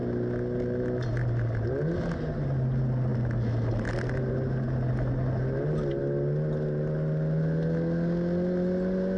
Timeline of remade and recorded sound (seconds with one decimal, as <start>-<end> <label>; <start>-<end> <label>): 0.0-9.2 recorded